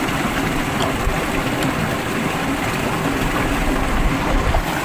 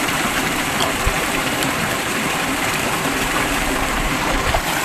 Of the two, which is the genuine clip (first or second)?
first